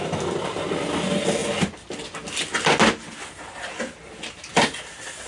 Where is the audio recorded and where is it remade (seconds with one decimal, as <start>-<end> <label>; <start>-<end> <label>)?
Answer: 0.0-5.3 recorded